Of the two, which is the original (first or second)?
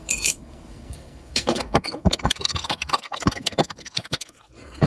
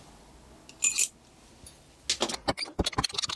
second